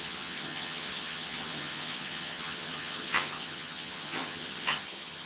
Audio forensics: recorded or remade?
remade